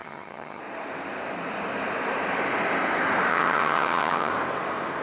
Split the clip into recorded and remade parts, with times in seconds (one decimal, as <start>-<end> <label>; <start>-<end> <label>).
0.0-0.6 remade; 0.6-3.3 recorded; 3.3-4.3 remade; 4.3-5.0 recorded